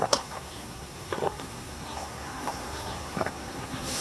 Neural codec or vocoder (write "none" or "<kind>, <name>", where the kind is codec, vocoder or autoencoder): codec, SNAC